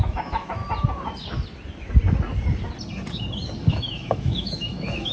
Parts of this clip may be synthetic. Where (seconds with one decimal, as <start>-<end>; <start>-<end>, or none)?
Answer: 0.0-0.6; 3.7-5.1